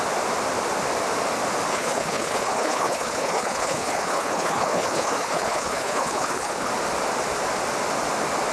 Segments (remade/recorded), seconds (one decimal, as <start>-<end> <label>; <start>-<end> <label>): 0.0-1.7 recorded; 1.7-6.7 remade; 6.7-8.5 recorded

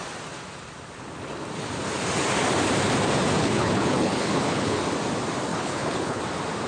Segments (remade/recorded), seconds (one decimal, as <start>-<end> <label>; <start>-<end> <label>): 0.0-3.4 recorded; 3.4-4.8 remade; 4.8-5.5 recorded; 5.5-6.2 remade; 6.2-6.7 recorded